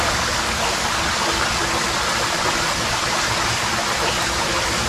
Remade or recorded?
recorded